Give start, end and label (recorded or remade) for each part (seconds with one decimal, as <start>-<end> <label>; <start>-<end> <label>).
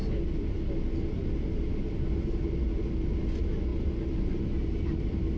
0.0-5.4 recorded